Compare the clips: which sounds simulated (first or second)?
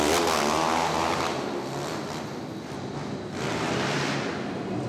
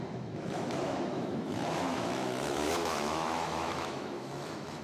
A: second